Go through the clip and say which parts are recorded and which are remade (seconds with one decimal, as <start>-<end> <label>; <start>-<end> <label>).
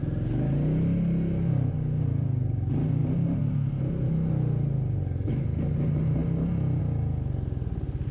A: 0.0-8.1 recorded